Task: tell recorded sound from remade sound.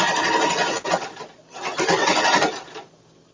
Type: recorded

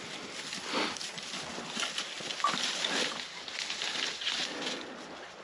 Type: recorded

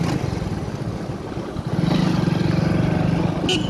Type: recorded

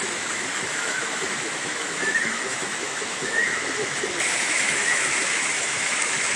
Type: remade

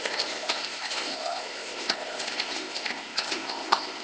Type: remade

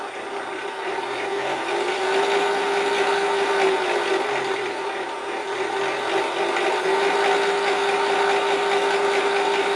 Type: recorded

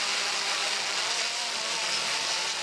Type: recorded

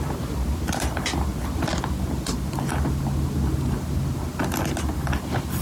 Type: recorded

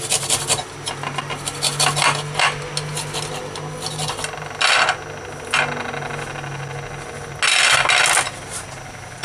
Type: recorded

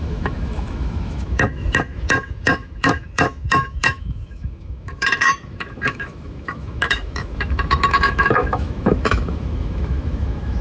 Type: remade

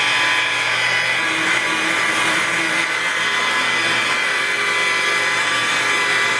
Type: recorded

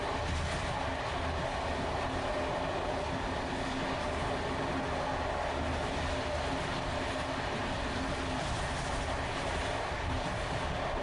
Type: recorded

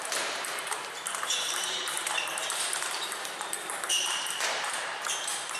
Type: remade